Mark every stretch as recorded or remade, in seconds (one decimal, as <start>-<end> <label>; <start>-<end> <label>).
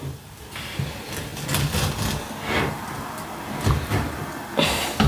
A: 0.0-5.1 recorded